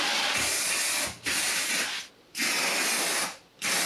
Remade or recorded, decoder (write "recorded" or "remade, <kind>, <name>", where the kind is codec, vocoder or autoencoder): recorded